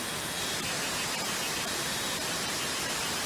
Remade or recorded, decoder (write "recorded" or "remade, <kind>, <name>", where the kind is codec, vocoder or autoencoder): recorded